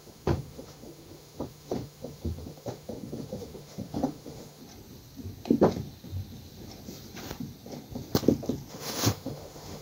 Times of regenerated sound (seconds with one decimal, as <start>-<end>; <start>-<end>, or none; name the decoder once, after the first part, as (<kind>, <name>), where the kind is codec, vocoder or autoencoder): 0.0-4.6 (autoencoder, DAC-VAE); 8.7-9.8